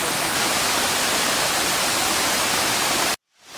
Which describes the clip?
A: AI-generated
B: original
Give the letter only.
B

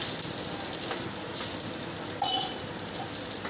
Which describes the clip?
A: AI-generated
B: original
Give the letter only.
B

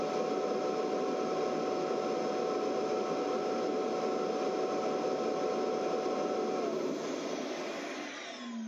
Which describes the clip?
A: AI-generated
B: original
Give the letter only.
B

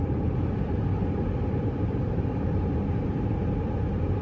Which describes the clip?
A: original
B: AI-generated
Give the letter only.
B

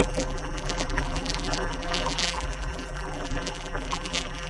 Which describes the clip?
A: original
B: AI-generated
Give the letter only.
B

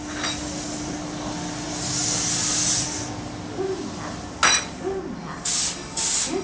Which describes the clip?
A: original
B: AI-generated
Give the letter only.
A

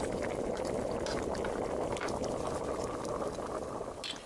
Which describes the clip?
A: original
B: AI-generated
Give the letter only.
A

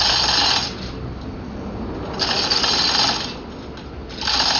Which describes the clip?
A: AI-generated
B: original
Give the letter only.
B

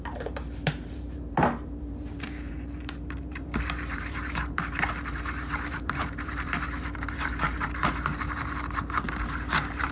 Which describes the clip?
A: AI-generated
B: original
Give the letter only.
A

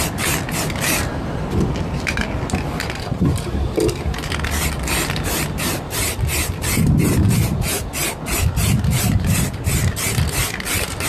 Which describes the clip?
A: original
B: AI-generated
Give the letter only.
A